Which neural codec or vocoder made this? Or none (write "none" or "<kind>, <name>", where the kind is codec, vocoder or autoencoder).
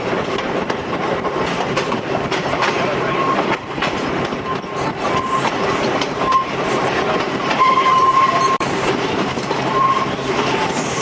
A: vocoder, BigVGAN v2